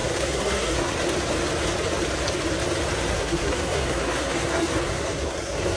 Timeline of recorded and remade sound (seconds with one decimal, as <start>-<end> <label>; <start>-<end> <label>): 0.0-0.9 remade; 0.9-3.1 recorded; 3.1-5.8 remade